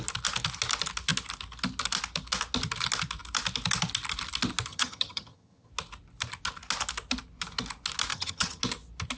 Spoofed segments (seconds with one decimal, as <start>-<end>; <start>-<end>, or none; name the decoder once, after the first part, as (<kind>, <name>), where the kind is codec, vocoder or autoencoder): 4.7-5.7 (vocoder, HiFi-GAN); 8.1-8.6